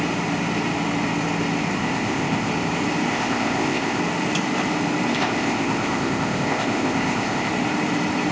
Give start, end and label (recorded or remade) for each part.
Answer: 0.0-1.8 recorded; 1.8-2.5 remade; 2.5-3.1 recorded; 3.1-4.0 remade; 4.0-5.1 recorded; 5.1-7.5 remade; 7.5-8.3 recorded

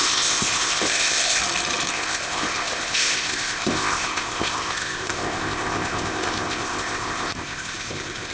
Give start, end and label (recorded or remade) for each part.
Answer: 0.0-1.4 remade; 1.4-1.9 recorded; 1.9-8.3 remade